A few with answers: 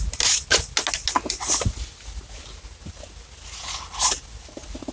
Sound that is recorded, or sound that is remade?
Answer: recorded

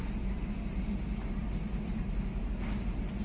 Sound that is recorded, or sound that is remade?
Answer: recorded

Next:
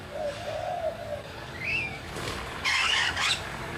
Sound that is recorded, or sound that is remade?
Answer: remade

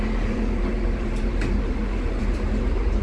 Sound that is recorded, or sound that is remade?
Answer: remade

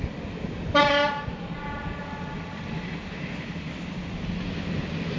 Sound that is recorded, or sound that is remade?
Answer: recorded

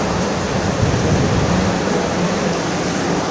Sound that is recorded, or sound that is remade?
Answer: recorded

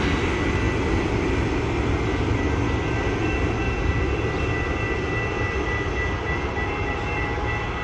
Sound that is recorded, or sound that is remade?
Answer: recorded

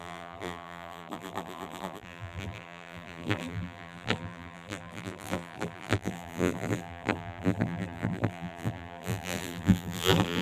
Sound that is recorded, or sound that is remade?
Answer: remade